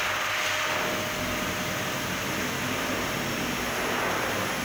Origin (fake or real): real